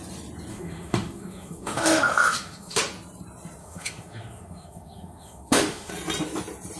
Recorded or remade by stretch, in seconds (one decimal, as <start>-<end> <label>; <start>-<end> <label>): 0.0-0.5 recorded; 0.5-2.8 remade; 2.8-3.6 recorded; 3.6-5.9 remade; 5.9-6.8 recorded